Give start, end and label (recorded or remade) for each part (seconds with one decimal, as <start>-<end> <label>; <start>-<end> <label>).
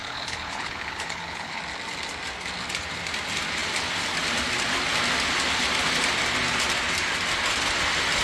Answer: 0.0-1.6 remade; 1.6-8.2 recorded